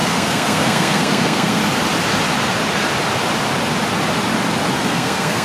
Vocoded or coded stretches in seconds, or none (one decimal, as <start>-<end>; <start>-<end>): 0.0-1.6; 4.8-5.4